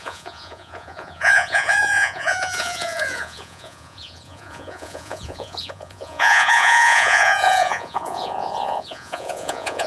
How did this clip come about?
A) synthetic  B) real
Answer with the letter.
A